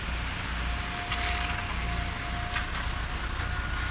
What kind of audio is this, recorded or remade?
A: recorded